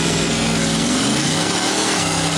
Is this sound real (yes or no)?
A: no